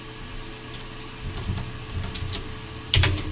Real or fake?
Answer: real